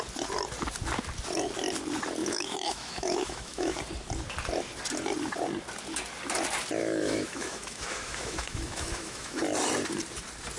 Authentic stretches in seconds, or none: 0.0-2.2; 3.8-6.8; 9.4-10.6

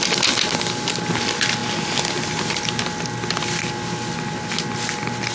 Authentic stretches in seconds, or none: 0.0-5.3

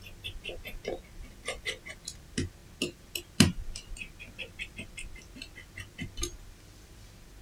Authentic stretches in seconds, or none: 0.0-7.4

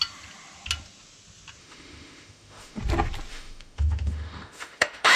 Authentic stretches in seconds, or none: 0.0-1.6; 2.8-3.3

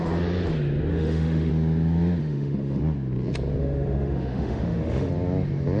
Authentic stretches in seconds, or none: 0.0-0.9; 1.5-2.2; 2.8-3.6; 5.1-5.8

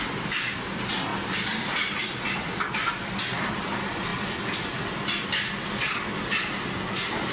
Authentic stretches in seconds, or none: 0.0-7.3